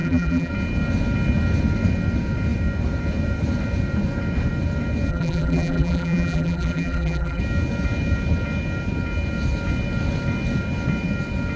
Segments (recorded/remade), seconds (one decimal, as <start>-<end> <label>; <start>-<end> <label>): 0.0-0.5 remade; 0.5-5.1 recorded; 5.1-7.4 remade; 7.4-11.6 recorded